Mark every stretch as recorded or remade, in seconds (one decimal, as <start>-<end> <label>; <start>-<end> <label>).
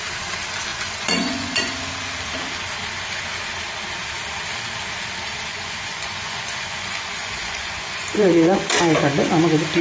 0.0-0.7 recorded; 0.7-1.7 remade; 1.7-5.5 recorded; 5.5-8.6 remade; 8.6-9.8 recorded